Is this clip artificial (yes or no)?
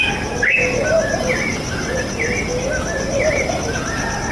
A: no